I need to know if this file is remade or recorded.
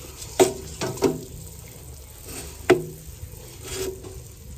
recorded